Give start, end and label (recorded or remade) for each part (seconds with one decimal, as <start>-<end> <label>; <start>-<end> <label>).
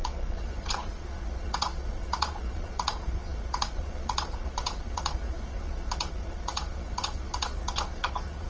0.0-8.5 remade